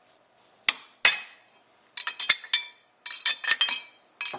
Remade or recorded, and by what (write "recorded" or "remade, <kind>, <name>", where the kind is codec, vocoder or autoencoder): recorded